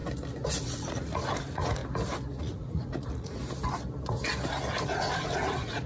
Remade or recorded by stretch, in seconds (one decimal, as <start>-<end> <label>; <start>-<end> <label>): 0.0-0.6 recorded; 0.6-1.8 remade; 1.8-2.4 recorded; 2.4-3.4 remade; 3.4-4.7 recorded; 4.7-5.9 remade